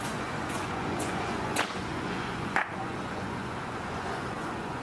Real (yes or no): no